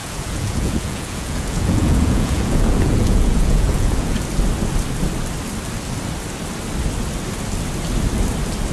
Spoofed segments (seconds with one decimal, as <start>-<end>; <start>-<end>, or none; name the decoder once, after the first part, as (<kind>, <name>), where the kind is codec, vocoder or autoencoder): 0.0-4.2 (vocoder, Vocos)